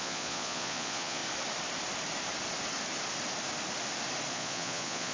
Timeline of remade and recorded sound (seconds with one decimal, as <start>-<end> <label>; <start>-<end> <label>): 0.0-1.2 remade; 1.2-4.3 recorded; 4.3-5.1 remade

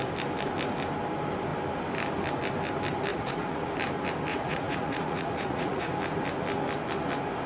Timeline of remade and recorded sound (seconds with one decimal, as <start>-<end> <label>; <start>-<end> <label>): 0.0-3.1 recorded; 3.1-3.6 remade; 3.6-4.3 recorded; 4.3-5.9 remade; 5.9-7.5 recorded

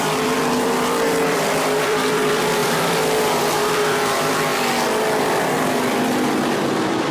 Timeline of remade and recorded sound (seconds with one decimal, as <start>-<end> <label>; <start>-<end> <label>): 0.0-4.5 remade; 4.5-5.2 recorded; 5.2-7.1 remade

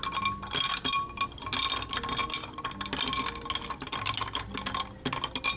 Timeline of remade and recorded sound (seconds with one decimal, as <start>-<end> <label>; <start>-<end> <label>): 0.0-5.6 recorded

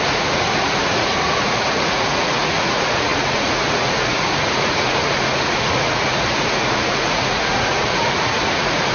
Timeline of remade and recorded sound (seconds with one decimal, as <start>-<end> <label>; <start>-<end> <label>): 0.0-8.9 remade